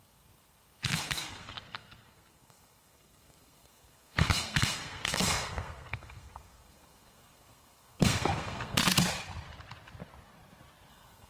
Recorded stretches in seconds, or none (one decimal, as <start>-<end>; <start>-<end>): 8.8-10.9